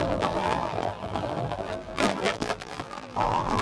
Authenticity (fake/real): fake